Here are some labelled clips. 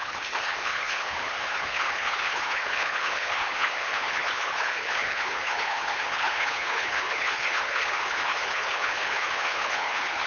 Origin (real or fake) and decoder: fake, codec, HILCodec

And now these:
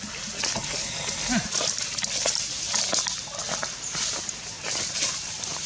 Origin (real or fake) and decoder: real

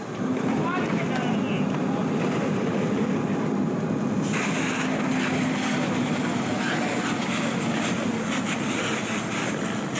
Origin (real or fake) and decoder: real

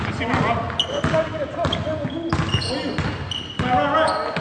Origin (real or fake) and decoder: real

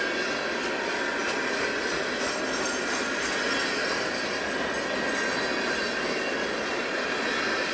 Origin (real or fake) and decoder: real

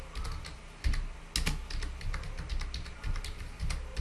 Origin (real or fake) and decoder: real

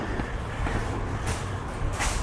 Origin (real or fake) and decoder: real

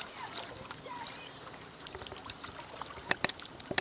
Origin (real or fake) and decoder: fake, vocoder, BigVGAN v2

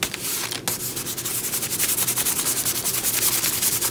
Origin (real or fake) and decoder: real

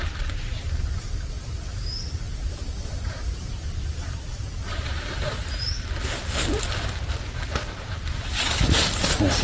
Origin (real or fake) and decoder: real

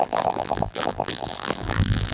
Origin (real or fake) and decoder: fake, vocoder, BigVGAN v2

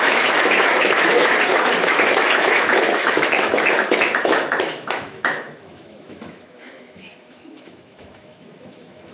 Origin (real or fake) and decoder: fake, autoencoder, DAC-VAE